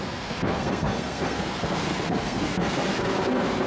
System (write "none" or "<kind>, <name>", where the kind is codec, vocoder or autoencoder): codec, SNAC